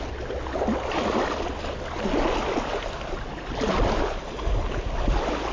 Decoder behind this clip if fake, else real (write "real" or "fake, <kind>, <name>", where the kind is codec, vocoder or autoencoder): real